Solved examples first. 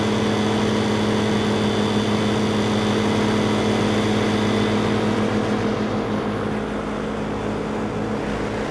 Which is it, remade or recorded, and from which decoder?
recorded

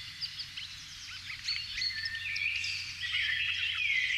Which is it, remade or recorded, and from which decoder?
recorded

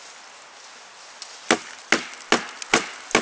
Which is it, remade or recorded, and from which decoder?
recorded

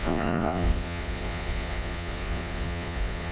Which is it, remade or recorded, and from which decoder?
remade, vocoder, Vocos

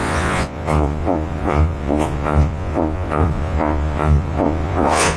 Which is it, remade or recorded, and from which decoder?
remade, vocoder, Vocos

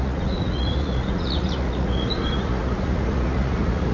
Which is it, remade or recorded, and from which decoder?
remade, vocoder, Vocos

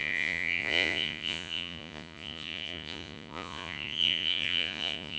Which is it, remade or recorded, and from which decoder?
remade, vocoder, Vocos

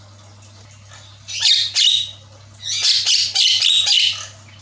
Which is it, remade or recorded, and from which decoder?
recorded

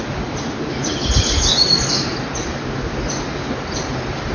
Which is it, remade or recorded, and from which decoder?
recorded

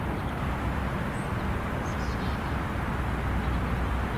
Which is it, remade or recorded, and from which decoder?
recorded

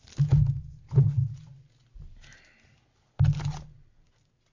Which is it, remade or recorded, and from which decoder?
recorded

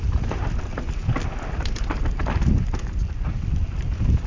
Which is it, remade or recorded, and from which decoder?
recorded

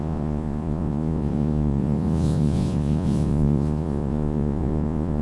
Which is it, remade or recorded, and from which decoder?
remade, vocoder, Vocos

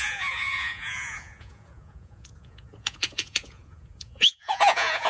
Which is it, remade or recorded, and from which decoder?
remade, vocoder, Vocos